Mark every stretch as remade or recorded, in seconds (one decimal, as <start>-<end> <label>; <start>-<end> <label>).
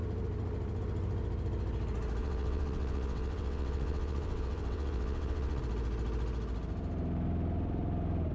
0.0-2.2 recorded; 2.2-5.6 remade; 5.6-8.3 recorded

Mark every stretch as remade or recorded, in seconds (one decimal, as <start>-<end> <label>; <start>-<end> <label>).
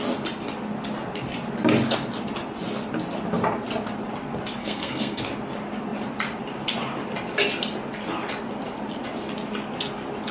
0.0-4.6 recorded; 4.6-5.2 remade; 5.2-10.3 recorded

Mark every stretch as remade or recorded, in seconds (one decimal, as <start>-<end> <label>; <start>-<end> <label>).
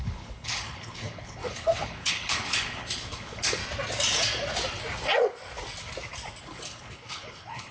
0.0-3.6 remade; 3.6-6.4 recorded; 6.4-7.7 remade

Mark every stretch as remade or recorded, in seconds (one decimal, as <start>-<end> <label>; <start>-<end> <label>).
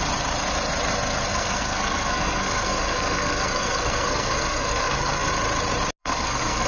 0.0-1.3 recorded; 1.3-5.3 remade; 5.3-6.0 recorded; 6.0-6.7 remade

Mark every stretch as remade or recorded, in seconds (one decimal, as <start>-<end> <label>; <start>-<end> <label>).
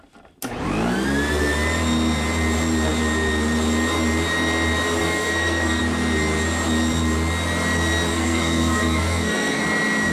0.0-5.0 recorded; 5.0-5.8 remade; 5.8-8.1 recorded; 8.1-9.6 remade; 9.6-10.1 recorded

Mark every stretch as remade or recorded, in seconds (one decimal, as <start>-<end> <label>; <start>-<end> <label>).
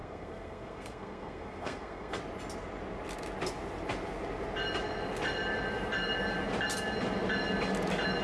0.0-2.2 remade; 2.2-8.2 recorded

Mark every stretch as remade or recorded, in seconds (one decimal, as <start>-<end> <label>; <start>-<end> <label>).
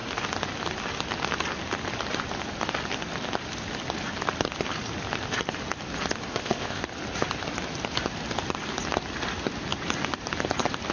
0.0-6.3 recorded; 6.3-6.8 remade; 6.8-10.9 recorded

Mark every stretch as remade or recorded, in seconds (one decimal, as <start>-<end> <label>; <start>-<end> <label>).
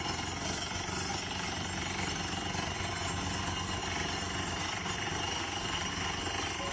0.0-1.1 recorded; 1.1-2.9 remade; 2.9-3.8 recorded; 3.8-5.9 remade; 5.9-6.7 recorded